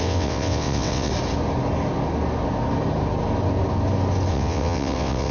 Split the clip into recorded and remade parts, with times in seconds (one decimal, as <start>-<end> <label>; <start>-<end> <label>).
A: 0.0-1.1 remade; 1.1-4.3 recorded; 4.3-5.3 remade